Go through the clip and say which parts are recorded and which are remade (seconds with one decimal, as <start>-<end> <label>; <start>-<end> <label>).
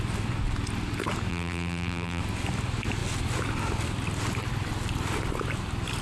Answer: 0.0-1.3 recorded; 1.3-2.2 remade; 2.2-6.0 recorded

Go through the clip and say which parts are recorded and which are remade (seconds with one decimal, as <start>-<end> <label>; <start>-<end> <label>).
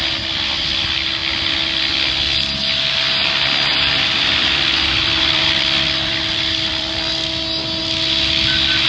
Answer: 0.0-3.7 recorded; 3.7-7.1 remade; 7.1-8.9 recorded